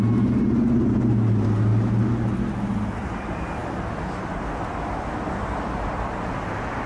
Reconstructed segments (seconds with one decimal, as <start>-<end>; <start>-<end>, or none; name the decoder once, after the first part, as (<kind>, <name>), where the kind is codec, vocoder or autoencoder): none